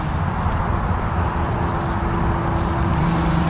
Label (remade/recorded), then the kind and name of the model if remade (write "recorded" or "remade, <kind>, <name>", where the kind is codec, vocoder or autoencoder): recorded